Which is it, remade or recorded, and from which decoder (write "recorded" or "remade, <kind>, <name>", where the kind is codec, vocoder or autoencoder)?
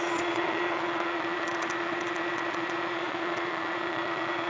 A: remade, vocoder, Vocos